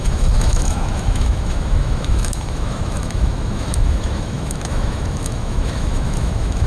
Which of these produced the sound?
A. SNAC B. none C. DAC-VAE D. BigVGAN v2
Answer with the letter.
C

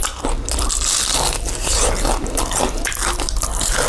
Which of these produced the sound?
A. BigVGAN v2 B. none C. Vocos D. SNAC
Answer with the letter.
B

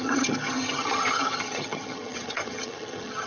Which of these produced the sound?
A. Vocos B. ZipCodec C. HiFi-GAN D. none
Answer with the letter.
C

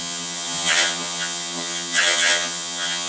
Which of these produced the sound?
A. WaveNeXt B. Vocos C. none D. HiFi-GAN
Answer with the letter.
D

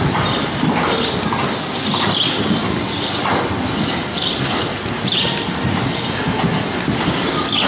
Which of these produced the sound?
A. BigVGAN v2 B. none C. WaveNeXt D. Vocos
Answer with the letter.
B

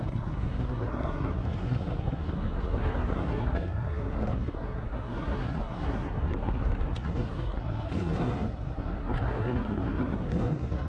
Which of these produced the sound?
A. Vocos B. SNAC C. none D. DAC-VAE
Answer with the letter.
B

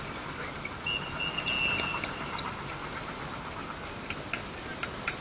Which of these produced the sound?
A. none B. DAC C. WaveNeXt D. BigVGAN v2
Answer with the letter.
A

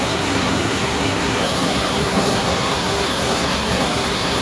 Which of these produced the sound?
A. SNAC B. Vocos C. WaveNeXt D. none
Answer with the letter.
A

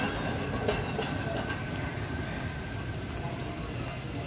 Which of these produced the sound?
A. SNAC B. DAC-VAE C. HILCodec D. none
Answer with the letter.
D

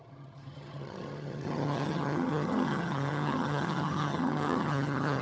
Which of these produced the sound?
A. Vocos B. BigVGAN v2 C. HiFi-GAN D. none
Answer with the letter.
C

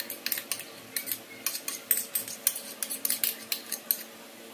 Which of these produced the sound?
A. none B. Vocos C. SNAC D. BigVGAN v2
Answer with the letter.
A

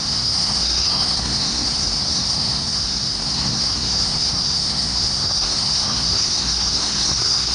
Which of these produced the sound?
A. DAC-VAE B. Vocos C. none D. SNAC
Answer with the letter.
D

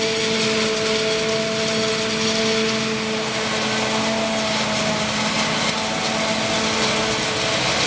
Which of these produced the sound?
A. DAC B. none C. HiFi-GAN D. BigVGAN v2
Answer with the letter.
B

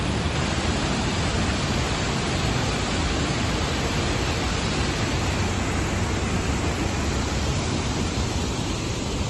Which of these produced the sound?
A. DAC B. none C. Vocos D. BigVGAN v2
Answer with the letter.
B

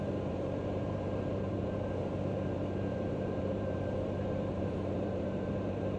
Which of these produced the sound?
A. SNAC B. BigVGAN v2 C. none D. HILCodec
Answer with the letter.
B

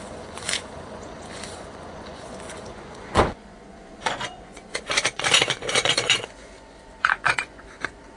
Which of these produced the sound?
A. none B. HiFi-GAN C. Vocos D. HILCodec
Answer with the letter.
C